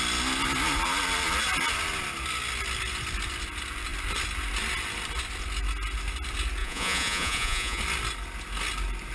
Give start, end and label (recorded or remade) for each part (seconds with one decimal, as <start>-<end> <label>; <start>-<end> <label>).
0.0-6.6 recorded; 6.6-7.8 remade; 7.8-9.1 recorded